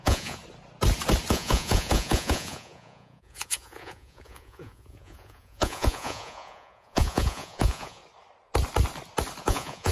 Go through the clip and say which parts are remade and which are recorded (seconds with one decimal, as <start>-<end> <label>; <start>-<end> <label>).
0.0-0.4 remade; 0.4-1.3 recorded; 1.3-8.0 remade; 8.0-9.4 recorded; 9.4-9.9 remade